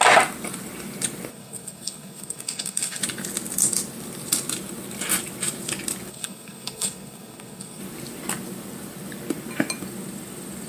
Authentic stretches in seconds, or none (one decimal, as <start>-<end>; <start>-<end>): 0.0-1.3; 3.0-6.1; 7.8-10.7